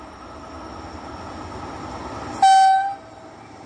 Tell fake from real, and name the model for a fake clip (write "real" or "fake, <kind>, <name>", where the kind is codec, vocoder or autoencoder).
real